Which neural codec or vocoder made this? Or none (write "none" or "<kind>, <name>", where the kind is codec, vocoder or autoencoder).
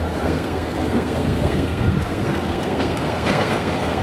codec, SNAC